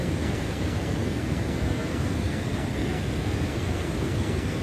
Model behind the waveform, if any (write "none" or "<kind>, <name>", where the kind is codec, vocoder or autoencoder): codec, SNAC